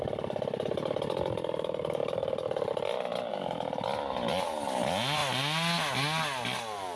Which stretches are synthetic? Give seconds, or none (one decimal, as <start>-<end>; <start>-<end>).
none